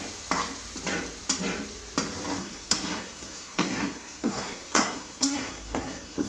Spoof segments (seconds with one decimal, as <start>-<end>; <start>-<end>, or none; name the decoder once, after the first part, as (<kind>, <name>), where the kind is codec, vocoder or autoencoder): 2.4-6.3 (codec, SNAC)